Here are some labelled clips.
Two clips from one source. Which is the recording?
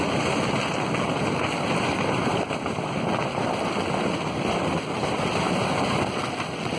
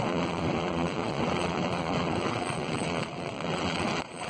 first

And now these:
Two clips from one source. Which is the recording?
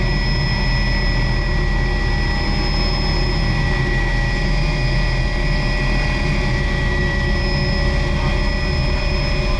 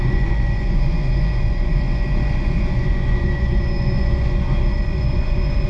first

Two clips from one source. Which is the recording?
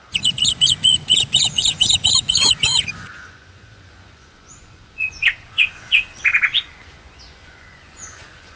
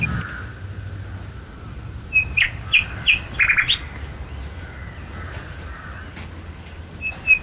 second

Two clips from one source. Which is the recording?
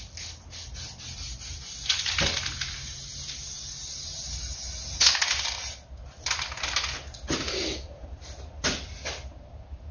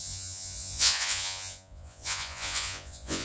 first